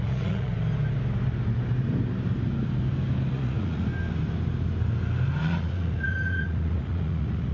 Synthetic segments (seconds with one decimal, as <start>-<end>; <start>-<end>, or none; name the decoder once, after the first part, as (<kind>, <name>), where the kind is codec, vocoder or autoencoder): 0.0-0.5 (vocoder, Vocos); 3.3-3.9; 5.4-7.5

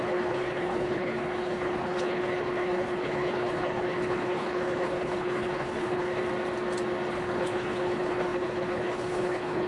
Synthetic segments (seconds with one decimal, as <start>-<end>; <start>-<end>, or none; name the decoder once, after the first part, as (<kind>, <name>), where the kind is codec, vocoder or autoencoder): 0.0-6.2 (codec, HILCodec); 7.1-9.7

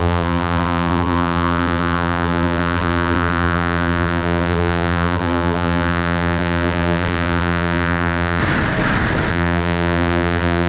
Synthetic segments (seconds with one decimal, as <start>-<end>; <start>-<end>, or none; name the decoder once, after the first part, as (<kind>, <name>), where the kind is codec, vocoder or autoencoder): 0.0-8.4 (vocoder, BigVGAN v2); 9.3-10.7

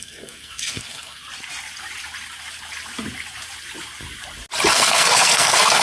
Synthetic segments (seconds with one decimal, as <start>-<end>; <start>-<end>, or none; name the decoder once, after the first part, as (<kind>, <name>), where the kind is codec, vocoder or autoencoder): 0.0-1.2 (codec, SNAC); 4.7-5.8